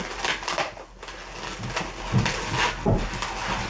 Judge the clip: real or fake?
real